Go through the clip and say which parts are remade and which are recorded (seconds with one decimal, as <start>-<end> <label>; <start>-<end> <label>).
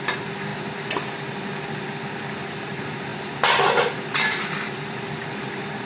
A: 0.0-5.9 recorded